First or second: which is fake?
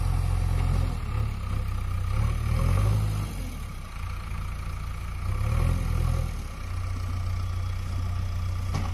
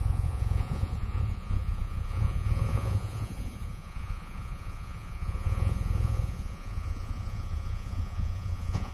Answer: second